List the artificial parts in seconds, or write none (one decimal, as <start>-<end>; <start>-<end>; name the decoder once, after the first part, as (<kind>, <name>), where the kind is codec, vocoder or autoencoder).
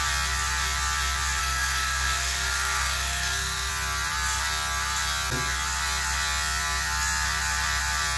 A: 1.4-3.7 (codec, SNAC)